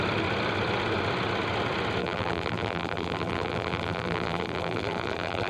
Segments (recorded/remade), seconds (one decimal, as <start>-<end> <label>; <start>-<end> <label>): 0.0-2.0 recorded; 2.0-5.5 remade

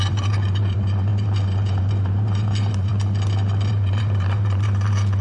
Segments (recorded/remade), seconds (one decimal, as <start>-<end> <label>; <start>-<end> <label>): 0.0-2.9 remade; 2.9-3.7 recorded; 3.7-5.2 remade

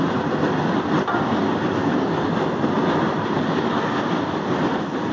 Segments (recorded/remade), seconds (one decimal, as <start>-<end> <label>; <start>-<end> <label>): 0.0-1.8 recorded; 1.8-5.1 remade

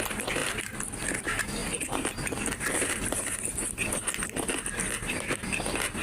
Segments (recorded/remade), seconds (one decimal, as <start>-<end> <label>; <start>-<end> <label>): 0.0-1.6 recorded; 1.6-3.4 remade; 3.4-6.0 recorded